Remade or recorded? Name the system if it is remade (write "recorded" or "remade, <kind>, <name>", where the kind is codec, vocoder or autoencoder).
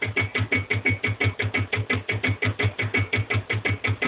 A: recorded